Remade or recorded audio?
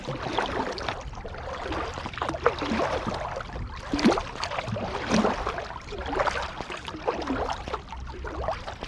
recorded